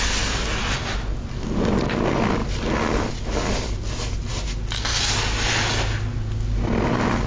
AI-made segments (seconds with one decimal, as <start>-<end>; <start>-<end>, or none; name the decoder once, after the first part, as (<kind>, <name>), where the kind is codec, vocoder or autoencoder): none